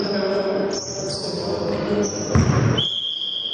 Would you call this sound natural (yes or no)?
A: yes